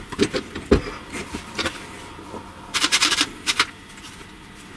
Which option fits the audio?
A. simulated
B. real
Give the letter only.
A